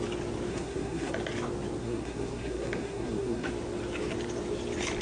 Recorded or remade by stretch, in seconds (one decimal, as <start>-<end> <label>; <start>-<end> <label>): 0.0-0.5 recorded; 0.5-1.1 remade; 1.1-1.8 recorded; 1.8-3.5 remade; 3.5-5.0 recorded